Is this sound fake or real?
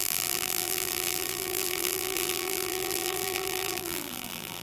fake